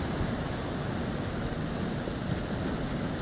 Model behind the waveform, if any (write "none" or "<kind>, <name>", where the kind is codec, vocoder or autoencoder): none